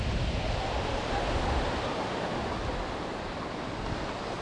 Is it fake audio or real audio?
real